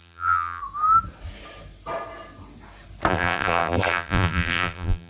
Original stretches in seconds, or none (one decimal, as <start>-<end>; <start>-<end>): 0.6-3.1